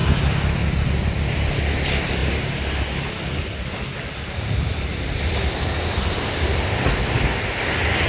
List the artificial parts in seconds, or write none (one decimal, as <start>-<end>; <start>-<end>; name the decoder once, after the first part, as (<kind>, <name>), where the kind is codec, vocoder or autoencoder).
none